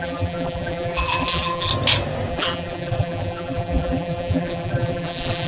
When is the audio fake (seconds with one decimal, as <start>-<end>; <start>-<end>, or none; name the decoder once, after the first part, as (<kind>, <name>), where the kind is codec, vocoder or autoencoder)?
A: 0.0-1.7 (vocoder, BigVGAN v2); 2.3-5.5

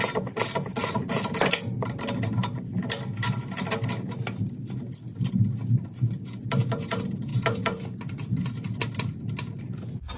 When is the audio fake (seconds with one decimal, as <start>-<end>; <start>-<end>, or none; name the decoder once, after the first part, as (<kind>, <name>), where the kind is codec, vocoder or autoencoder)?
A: 0.8-2.0 (vocoder, BigVGAN v2)

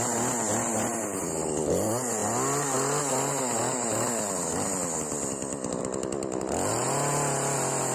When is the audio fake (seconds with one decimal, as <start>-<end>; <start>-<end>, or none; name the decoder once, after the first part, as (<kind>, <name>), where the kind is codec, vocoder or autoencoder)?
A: 0.7-1.2 (vocoder, BigVGAN v2)